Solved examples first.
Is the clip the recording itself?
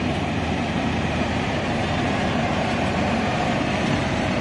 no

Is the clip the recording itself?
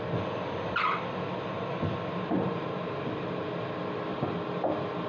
yes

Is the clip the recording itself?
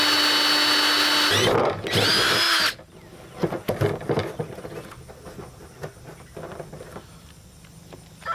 yes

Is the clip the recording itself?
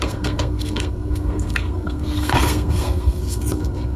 no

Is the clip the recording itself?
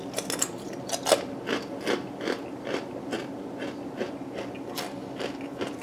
yes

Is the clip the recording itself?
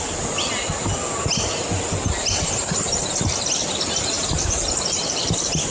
yes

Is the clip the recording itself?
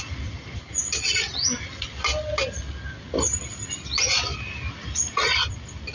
yes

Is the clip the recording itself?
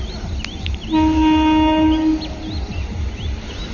yes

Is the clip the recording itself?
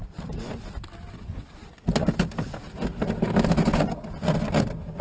yes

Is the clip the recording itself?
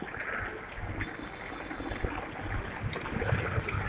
yes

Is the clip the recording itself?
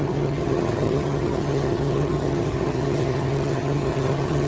no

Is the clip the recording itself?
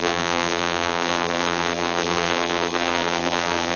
no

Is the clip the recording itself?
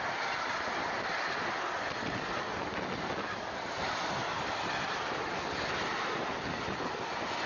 yes